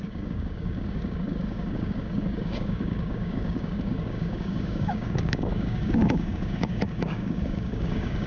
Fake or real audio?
fake